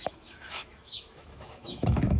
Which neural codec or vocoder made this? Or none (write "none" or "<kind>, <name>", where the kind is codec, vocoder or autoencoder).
autoencoder, DAC-VAE